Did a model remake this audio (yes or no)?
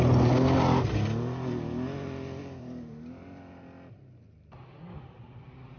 no